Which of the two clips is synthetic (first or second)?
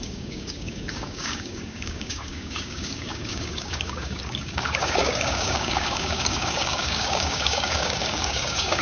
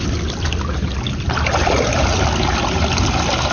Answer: first